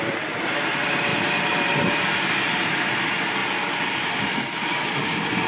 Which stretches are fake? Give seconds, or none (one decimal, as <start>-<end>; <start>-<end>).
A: 0.0-3.4; 4.2-5.5